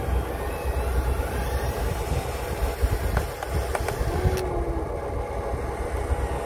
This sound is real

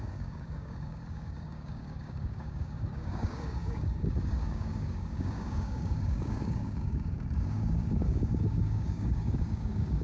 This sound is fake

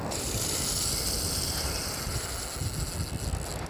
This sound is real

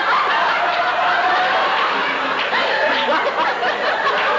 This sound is real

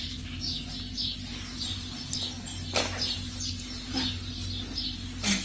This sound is real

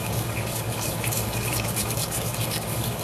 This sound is fake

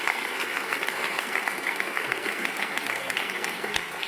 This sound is fake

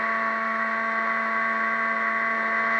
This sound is real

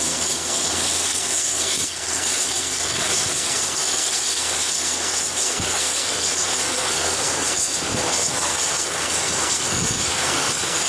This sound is fake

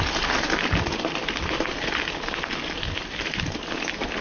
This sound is real